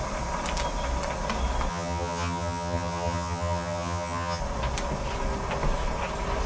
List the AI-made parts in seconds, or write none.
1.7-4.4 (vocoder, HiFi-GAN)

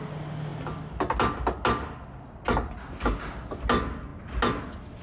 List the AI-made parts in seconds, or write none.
none

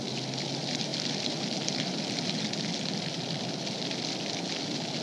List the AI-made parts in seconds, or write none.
none

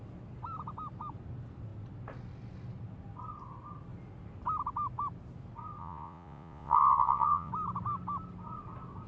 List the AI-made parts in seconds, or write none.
5.8-7.5 (vocoder, Vocos)